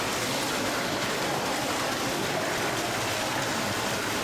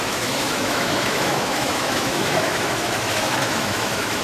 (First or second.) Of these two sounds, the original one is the first